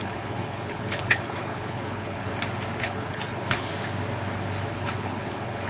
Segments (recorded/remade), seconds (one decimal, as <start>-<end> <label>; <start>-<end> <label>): 0.0-2.3 remade; 2.3-2.8 recorded; 2.8-3.7 remade; 3.7-4.7 recorded; 4.7-5.7 remade